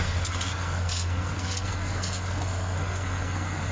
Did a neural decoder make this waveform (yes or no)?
yes